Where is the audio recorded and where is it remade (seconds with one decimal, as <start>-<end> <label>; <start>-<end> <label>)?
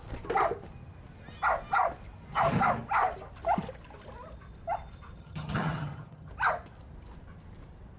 0.0-5.2 recorded; 5.2-6.3 remade; 6.3-8.0 recorded